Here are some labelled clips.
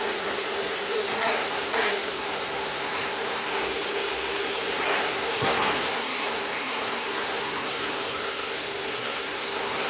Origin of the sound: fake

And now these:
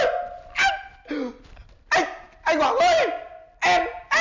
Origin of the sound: real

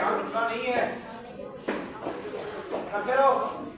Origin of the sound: real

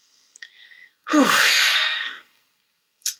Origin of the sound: fake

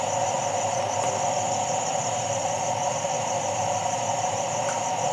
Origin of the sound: real